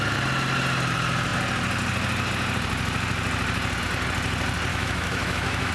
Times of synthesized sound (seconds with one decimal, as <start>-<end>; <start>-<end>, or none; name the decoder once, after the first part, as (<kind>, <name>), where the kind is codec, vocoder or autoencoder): 4.7-5.7 (autoencoder, DAC-VAE)